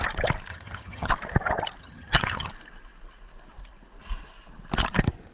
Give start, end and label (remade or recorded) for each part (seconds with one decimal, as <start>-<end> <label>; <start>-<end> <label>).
0.0-0.5 recorded; 0.5-1.1 remade; 1.1-1.8 recorded; 1.8-2.5 remade; 2.5-5.3 recorded